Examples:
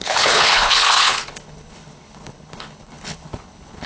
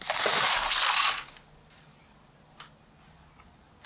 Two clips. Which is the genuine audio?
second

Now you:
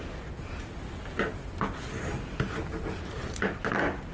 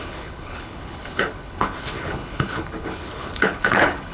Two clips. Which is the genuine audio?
first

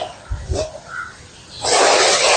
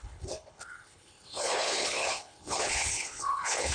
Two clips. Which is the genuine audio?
first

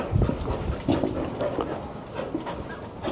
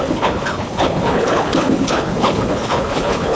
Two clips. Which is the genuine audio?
first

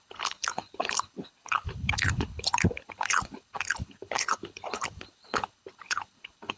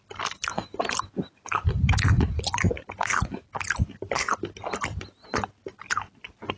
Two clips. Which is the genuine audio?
second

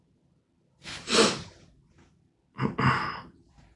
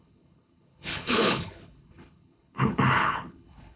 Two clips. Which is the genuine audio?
first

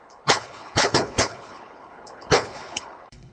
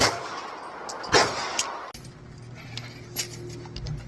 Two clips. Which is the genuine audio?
second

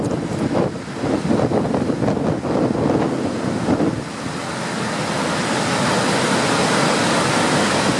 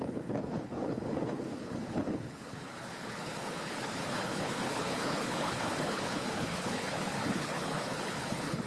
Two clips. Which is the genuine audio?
first